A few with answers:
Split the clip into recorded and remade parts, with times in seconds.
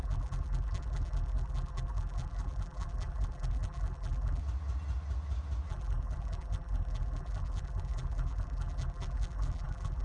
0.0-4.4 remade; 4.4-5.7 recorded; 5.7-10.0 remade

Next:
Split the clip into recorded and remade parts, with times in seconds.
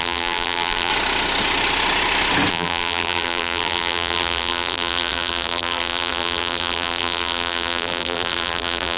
0.0-0.9 remade; 0.9-2.5 recorded; 2.5-9.0 remade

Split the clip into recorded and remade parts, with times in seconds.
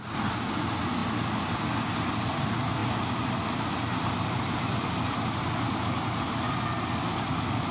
0.0-2.8 recorded; 2.8-5.4 remade; 5.4-7.7 recorded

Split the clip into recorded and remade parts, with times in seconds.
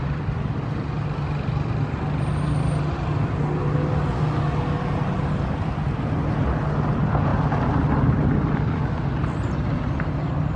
0.0-10.6 recorded